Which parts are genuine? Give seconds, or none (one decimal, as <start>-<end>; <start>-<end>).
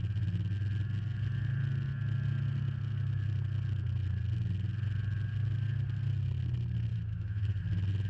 0.0-6.9; 7.6-8.1